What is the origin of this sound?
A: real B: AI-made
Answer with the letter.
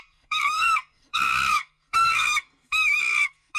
B